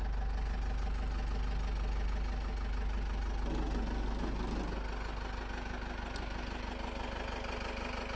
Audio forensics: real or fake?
real